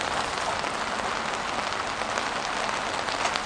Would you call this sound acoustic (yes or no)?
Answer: yes